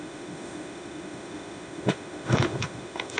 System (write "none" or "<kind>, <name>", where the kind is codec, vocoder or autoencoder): autoencoder, DAC-VAE